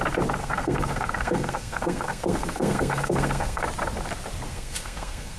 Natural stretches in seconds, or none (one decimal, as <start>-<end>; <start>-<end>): 0.0-0.4; 3.6-4.5